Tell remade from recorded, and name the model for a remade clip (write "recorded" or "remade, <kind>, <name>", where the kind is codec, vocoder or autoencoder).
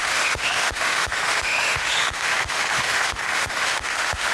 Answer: remade, autoencoder, DAC-VAE